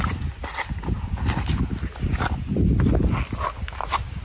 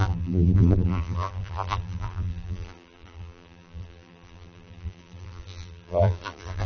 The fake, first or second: second